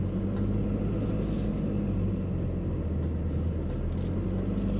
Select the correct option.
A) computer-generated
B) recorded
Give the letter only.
B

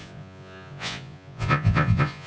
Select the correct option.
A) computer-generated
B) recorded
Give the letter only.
A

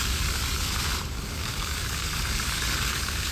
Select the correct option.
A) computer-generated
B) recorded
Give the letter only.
A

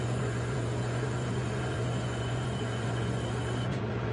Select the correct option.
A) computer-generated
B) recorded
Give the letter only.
A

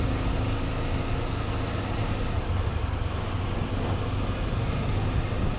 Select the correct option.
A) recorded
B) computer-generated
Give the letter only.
A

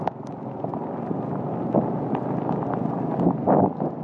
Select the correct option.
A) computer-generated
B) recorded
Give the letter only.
B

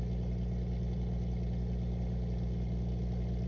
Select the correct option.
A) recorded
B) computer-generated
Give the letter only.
A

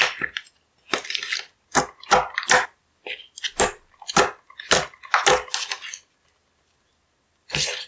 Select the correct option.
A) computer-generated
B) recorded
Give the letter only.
B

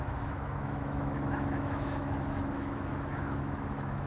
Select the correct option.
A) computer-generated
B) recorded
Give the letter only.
A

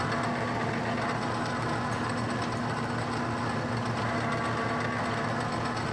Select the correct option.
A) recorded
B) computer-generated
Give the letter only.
A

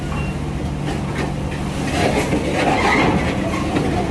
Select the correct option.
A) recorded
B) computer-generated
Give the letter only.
A